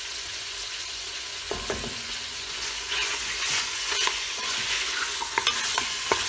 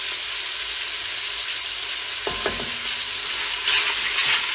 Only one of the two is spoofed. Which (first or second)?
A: first